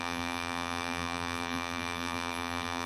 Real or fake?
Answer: fake